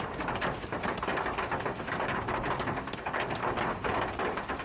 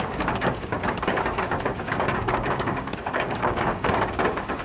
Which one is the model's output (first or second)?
second